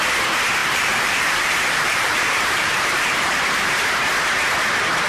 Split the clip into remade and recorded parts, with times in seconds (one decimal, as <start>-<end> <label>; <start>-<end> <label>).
0.0-0.6 recorded; 0.6-3.7 remade; 3.7-5.1 recorded